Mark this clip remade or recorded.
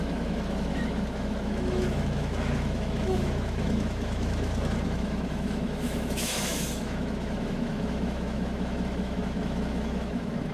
remade